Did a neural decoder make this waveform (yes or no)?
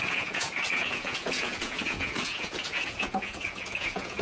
yes